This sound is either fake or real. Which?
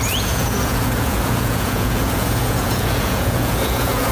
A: fake